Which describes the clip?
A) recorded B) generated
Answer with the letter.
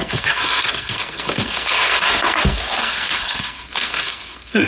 B